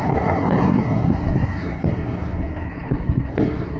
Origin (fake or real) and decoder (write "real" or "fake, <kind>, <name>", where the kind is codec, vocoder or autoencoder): fake, codec, SNAC